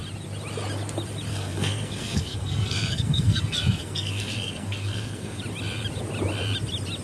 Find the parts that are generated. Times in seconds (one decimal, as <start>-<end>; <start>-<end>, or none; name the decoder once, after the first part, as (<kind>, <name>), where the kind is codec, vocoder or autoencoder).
1.3-5.4 (codec, SNAC)